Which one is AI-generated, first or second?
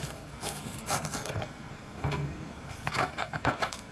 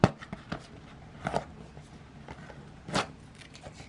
first